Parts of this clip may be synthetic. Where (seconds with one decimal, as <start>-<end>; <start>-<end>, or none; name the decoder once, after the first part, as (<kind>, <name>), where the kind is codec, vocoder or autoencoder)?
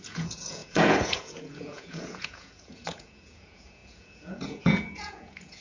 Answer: 0.0-5.6 (vocoder, Vocos)